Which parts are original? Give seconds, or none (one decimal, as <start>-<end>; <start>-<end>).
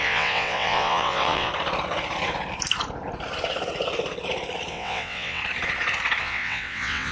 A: 1.5-4.7; 5.4-6.2